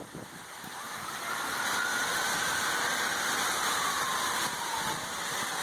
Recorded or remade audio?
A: recorded